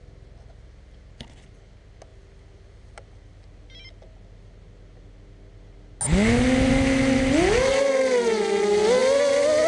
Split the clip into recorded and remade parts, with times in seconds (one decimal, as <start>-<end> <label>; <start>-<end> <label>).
0.0-9.7 recorded